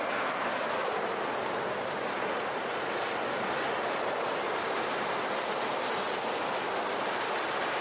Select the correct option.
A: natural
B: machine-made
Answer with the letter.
A